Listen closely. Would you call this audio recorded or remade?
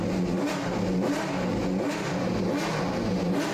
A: recorded